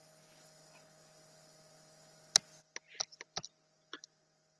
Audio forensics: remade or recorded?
recorded